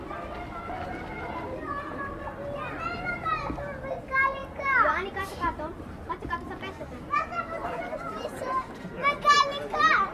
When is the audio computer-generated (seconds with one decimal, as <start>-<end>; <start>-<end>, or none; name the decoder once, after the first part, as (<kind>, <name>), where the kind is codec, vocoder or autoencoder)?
none